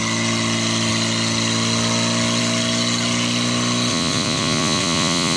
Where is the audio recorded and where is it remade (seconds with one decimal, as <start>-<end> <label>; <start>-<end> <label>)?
0.0-3.9 recorded; 3.9-5.4 remade